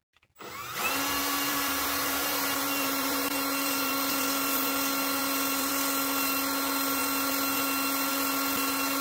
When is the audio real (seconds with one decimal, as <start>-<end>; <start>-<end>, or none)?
0.0-1.2; 3.9-9.0